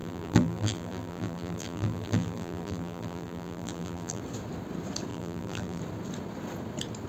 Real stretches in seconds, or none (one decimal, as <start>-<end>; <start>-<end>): 4.2-5.1; 5.8-7.1